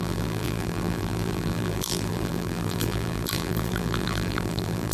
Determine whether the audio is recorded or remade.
remade